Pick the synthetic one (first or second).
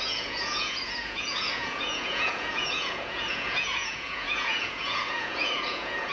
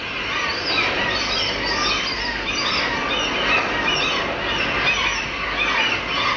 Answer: first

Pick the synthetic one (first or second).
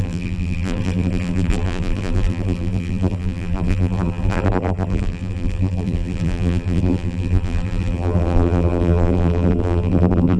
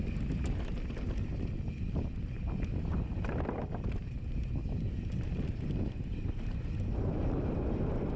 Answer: first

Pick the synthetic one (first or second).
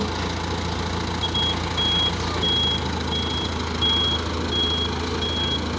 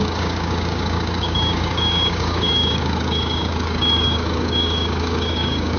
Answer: second